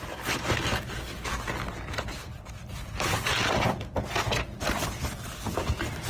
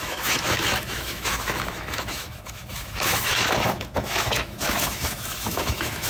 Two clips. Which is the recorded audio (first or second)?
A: first